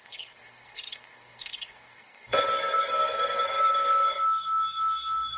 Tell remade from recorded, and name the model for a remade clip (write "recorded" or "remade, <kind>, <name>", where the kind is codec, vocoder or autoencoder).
remade, codec, SNAC